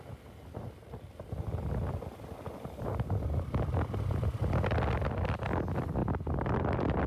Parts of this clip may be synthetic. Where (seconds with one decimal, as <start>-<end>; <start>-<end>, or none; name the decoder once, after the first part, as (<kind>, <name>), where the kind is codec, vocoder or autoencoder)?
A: none